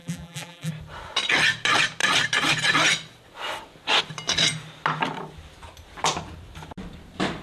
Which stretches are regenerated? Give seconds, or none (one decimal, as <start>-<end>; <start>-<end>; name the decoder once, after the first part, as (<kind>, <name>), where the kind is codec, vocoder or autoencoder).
0.0-0.7 (vocoder, BigVGAN v2)